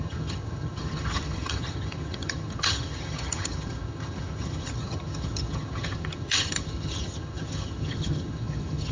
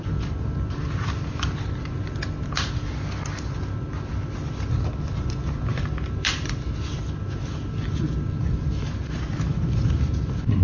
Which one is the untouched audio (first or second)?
second